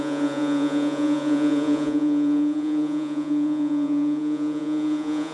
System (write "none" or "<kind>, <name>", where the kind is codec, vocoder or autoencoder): vocoder, Vocos